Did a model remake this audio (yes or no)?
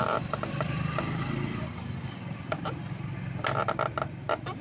no